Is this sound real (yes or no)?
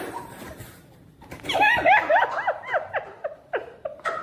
no